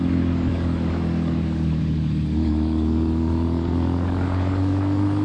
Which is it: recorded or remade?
remade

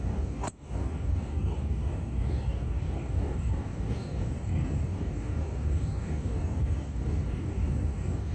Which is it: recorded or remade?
remade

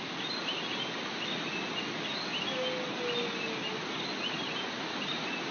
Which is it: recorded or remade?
recorded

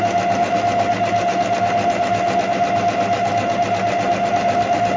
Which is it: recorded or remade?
recorded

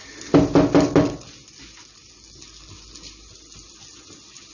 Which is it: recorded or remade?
recorded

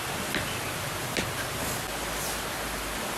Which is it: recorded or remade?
recorded